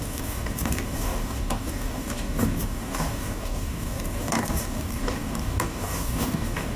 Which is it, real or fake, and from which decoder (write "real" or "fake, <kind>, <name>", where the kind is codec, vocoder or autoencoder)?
fake, codec, DAC